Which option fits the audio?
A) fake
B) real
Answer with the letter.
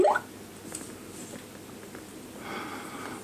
B